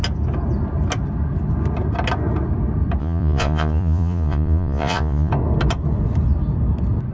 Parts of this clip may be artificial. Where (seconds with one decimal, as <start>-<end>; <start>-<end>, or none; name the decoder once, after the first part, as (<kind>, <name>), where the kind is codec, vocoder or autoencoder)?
3.0-5.3 (vocoder, Vocos)